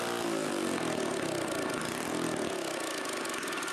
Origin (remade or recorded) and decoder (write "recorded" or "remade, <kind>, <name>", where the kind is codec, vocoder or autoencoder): recorded